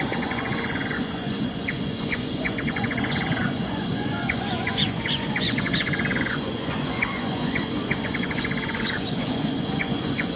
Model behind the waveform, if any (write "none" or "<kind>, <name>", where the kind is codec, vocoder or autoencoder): vocoder, Vocos